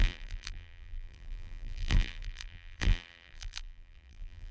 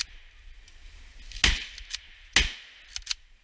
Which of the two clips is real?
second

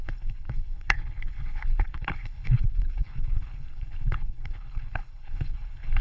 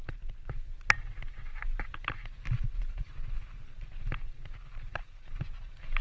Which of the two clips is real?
second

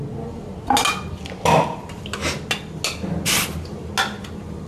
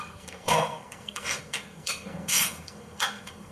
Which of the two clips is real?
first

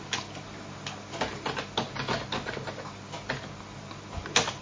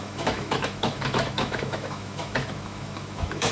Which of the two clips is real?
first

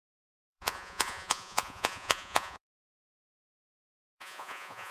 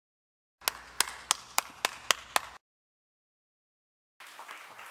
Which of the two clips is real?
second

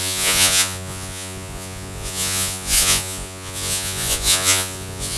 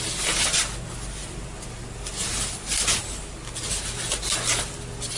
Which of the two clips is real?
second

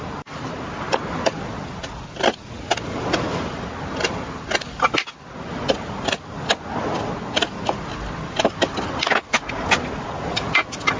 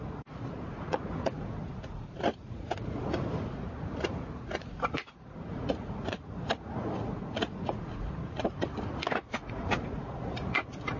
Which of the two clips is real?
first